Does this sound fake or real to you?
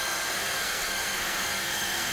fake